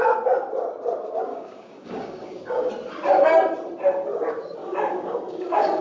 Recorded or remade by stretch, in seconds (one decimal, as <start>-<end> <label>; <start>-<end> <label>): 0.0-1.3 recorded; 1.3-2.7 remade; 2.7-4.6 recorded; 4.6-5.8 remade